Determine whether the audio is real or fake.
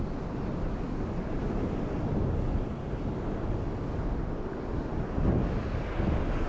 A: real